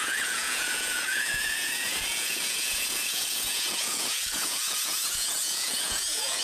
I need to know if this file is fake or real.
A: fake